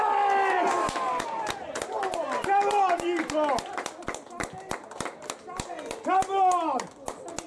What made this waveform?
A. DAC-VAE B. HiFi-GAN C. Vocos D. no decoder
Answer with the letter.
D